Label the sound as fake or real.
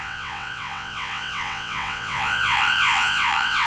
fake